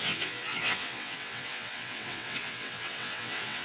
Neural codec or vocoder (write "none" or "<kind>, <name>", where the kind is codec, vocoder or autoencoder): vocoder, WaveNeXt